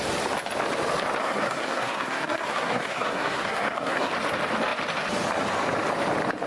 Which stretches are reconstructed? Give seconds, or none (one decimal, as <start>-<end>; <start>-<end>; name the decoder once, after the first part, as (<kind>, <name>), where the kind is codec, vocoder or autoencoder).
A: 1.2-4.1 (codec, SNAC)